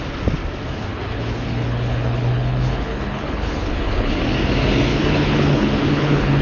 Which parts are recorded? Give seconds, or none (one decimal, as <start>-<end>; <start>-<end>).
0.0-0.9; 4.2-4.9